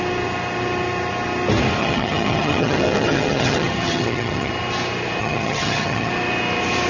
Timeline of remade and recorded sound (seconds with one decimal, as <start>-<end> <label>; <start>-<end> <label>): 0.0-1.8 recorded; 1.8-4.5 remade; 4.5-5.2 recorded; 5.2-6.1 remade; 6.1-6.9 recorded

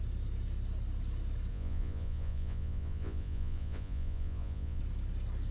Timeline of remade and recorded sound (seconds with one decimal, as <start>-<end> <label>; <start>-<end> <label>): 0.0-1.5 recorded; 1.5-4.8 remade; 4.8-5.5 recorded

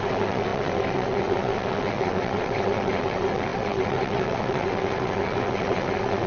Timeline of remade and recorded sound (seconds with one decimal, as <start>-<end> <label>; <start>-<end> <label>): 0.0-6.3 remade

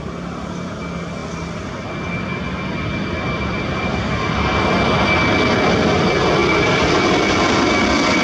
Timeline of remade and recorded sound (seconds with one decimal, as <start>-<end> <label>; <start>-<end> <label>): 0.0-1.2 recorded; 1.2-1.9 remade; 1.9-6.4 recorded; 6.4-7.1 remade; 7.1-8.2 recorded

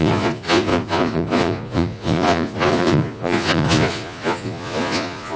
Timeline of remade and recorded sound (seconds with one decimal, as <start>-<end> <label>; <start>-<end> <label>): 0.0-5.4 remade

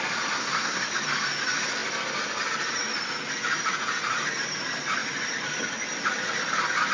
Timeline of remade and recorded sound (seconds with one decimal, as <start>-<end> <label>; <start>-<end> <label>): 0.0-0.4 recorded; 0.4-0.9 remade; 0.9-6.9 recorded